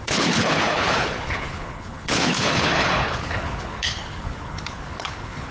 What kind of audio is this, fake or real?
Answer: fake